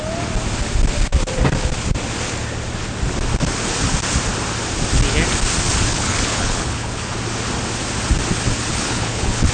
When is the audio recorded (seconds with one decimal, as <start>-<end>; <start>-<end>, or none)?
0.0-5.9; 7.1-8.7